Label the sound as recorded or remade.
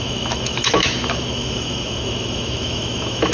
remade